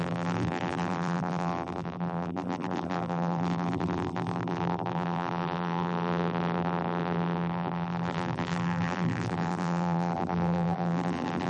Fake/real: fake